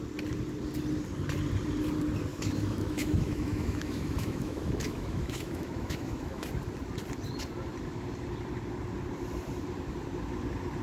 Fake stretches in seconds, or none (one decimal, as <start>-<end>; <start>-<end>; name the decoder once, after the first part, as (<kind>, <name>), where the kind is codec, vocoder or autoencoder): 2.3-6.5 (autoencoder, DAC-VAE)